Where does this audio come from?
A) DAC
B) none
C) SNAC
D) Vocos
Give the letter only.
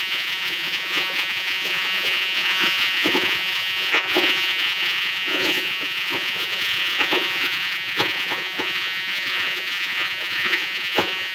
D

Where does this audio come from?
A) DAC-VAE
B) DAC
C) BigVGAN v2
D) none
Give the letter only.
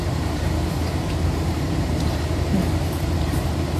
C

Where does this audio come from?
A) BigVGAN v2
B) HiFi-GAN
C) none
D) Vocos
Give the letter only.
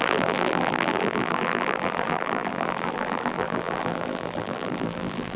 A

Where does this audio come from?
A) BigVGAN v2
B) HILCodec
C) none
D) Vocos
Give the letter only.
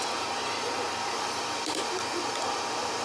A